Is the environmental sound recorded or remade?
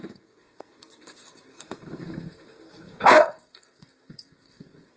remade